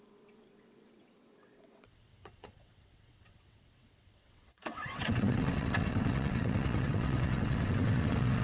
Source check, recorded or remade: remade